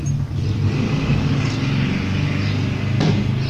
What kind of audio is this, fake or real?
real